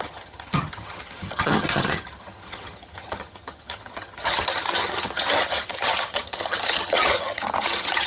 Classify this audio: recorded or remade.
remade